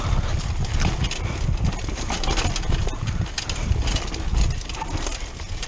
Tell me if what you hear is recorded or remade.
recorded